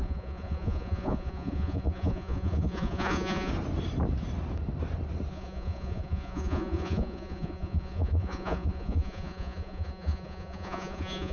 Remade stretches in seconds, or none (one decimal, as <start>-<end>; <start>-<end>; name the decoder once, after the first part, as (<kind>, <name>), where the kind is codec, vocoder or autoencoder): 0.0-3.5 (vocoder, Vocos); 5.3-11.3